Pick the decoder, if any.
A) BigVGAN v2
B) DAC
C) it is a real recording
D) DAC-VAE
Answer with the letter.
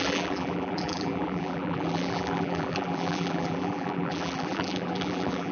A